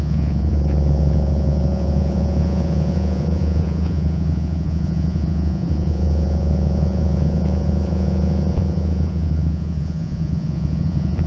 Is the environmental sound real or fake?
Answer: fake